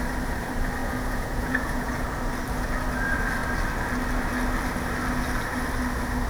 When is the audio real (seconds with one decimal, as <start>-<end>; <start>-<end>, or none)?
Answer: 0.0-0.8; 1.9-6.3